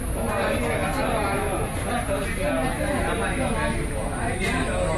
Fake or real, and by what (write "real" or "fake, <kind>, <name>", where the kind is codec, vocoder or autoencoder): real